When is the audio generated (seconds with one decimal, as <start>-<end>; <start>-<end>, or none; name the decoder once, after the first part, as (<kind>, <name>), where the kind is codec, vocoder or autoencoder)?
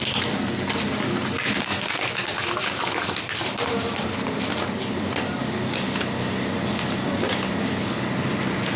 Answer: none